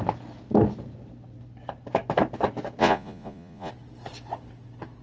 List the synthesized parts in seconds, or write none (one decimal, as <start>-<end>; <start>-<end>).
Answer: 2.8-3.7